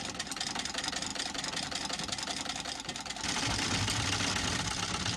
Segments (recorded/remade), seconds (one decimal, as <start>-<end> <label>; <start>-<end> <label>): 0.0-5.2 recorded